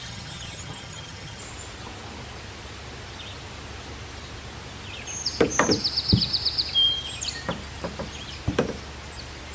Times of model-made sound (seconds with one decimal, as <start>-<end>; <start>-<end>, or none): 0.0-1.4